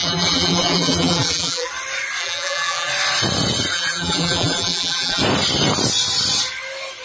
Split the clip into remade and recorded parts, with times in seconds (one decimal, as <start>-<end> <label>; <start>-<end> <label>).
0.0-1.7 remade; 1.7-2.2 recorded; 2.2-2.9 remade; 2.9-3.7 recorded; 3.7-5.2 remade; 5.2-7.0 recorded